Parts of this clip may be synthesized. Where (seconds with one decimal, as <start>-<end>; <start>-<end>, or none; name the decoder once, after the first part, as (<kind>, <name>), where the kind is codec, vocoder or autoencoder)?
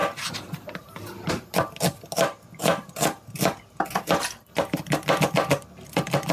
none